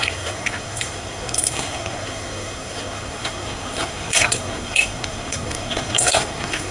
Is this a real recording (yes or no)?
no